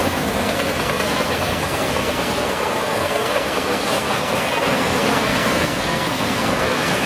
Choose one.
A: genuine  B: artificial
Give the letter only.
B